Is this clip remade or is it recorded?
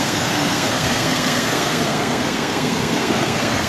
remade